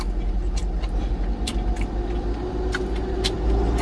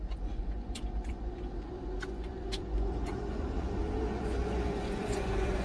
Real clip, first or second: first